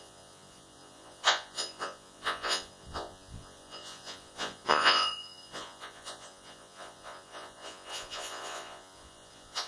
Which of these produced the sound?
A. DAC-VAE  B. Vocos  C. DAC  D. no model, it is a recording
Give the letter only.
B